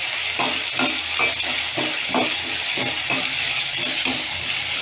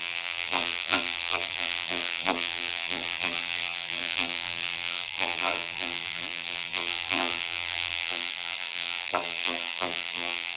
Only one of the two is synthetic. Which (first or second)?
second